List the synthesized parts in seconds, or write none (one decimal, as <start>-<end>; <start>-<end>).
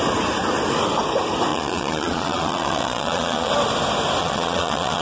1.5-3.5; 4.2-5.0